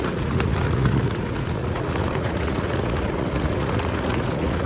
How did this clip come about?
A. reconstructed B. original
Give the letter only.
A